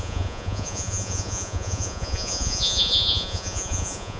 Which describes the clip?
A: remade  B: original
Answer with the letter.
A